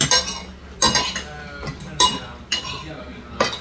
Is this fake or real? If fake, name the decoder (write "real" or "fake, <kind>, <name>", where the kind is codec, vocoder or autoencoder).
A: real